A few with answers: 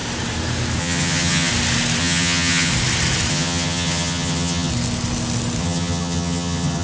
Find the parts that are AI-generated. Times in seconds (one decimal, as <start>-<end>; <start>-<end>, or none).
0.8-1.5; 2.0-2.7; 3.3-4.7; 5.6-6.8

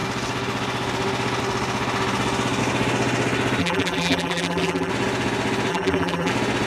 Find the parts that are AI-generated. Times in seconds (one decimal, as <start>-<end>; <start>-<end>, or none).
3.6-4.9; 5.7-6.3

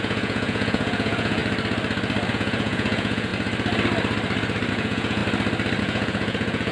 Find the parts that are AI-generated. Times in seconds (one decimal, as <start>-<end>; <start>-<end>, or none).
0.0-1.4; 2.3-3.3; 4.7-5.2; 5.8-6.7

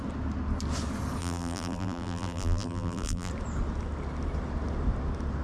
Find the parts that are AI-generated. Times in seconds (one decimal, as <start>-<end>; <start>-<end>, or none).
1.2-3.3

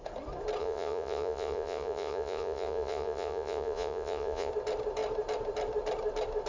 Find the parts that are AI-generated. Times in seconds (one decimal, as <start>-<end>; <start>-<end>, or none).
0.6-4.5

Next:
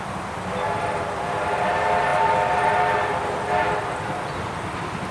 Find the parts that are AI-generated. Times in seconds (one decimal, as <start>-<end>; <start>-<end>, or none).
none

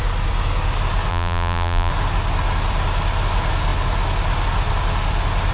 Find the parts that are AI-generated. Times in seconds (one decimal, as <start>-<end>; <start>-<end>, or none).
1.1-1.9